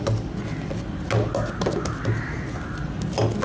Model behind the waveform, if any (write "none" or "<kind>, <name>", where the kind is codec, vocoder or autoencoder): none